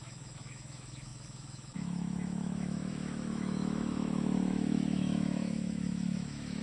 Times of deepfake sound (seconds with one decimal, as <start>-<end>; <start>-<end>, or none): 0.0-6.6